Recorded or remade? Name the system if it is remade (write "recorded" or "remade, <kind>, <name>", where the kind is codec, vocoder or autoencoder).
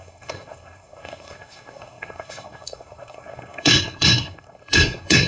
remade, codec, SNAC